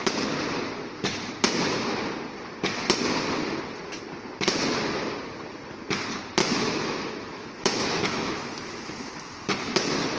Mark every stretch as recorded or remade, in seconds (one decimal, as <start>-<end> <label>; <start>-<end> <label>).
0.0-6.4 recorded; 6.4-9.1 remade; 9.1-10.2 recorded